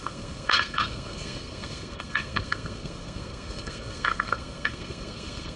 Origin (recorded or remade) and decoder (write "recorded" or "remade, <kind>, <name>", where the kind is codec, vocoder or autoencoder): remade, codec, SNAC